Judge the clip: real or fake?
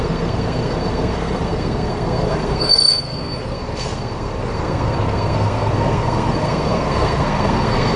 fake